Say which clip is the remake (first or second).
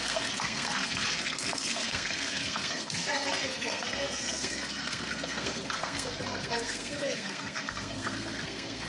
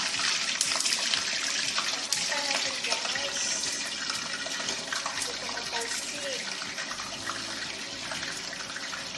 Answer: first